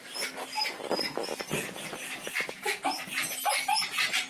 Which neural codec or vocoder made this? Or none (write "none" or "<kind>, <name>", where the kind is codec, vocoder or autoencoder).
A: none